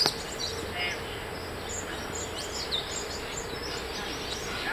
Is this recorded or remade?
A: recorded